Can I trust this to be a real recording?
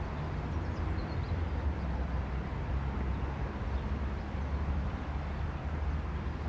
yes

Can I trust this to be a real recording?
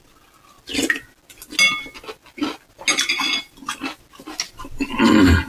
yes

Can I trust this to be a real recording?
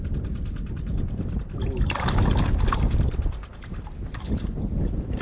yes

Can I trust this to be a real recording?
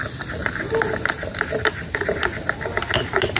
yes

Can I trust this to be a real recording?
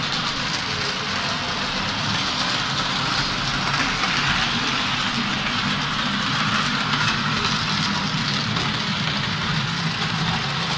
yes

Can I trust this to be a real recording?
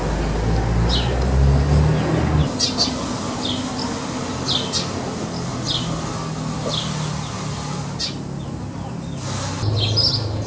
yes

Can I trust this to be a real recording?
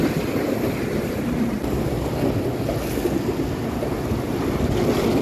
yes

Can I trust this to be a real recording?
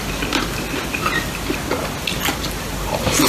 yes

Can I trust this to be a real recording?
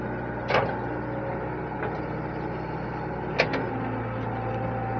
yes